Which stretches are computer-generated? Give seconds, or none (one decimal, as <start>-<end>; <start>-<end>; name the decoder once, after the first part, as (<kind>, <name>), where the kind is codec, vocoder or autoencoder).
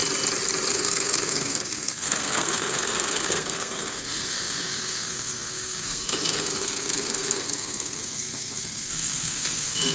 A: 0.7-9.9 (codec, SNAC)